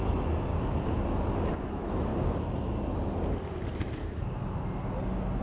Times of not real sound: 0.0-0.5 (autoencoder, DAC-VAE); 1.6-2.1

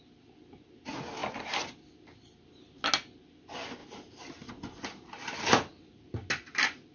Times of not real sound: none